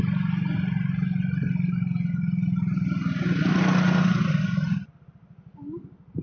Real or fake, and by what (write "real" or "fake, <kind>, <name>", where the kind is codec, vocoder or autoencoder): real